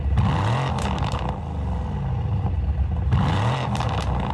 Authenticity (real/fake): real